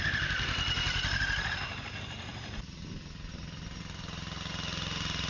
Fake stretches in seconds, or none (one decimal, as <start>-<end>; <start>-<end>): none